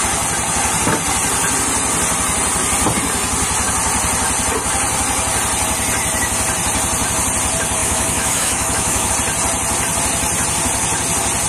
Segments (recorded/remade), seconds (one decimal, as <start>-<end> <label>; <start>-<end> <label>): 0.0-7.8 recorded; 7.8-9.1 remade; 9.1-11.5 recorded